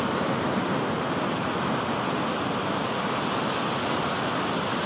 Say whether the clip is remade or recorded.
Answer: recorded